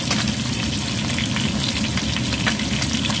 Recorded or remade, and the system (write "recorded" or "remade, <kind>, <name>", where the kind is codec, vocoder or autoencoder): recorded